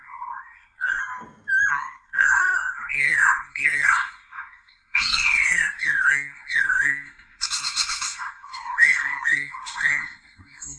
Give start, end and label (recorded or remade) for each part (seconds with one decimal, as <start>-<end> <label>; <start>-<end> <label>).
0.0-1.0 remade; 1.0-1.7 recorded; 1.7-10.8 remade